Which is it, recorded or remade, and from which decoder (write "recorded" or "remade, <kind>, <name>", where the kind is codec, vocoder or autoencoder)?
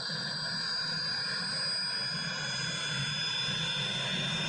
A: recorded